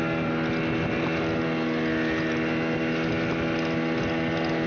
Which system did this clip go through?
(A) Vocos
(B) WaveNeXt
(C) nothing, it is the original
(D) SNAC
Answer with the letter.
C